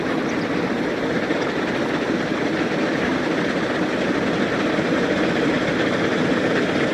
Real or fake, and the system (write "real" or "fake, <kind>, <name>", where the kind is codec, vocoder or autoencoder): fake, vocoder, BigVGAN v2